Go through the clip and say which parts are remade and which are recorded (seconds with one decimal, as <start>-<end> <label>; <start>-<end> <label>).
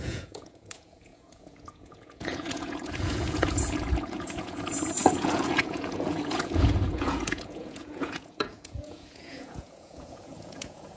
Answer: 0.0-11.0 remade